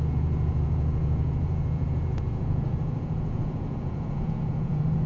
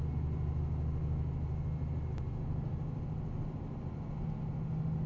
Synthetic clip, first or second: first